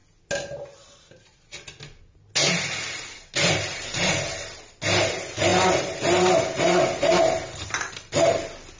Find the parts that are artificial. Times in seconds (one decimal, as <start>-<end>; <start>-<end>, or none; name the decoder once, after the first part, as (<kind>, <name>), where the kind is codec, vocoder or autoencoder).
none